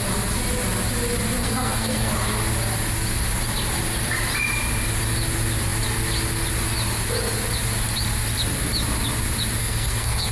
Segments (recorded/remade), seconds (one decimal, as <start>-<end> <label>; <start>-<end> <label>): 0.0-1.4 recorded; 1.4-2.1 remade; 2.1-9.6 recorded; 9.6-10.3 remade